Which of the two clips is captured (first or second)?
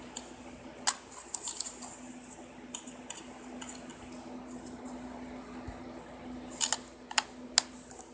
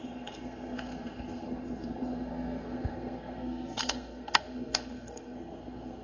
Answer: first